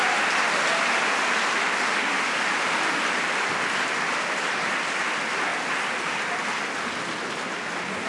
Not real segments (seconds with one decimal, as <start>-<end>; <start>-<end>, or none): none